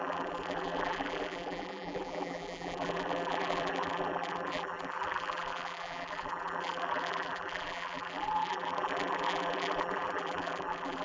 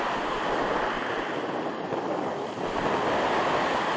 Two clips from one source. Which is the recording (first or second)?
second